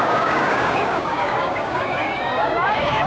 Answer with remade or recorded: remade